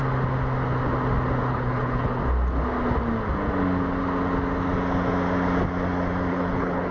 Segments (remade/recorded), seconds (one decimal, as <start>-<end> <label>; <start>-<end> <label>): 0.0-1.5 recorded; 1.5-2.2 remade; 2.2-6.3 recorded; 6.3-6.9 remade